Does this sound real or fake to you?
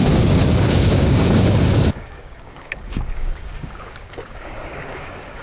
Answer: fake